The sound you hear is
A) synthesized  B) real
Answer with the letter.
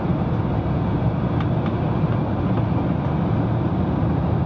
B